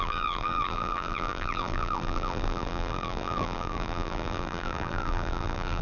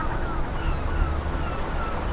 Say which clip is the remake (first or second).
first